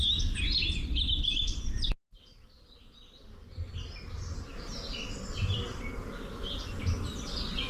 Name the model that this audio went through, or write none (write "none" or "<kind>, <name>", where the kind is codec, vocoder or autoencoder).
none